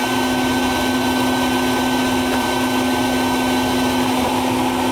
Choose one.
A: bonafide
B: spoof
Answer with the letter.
A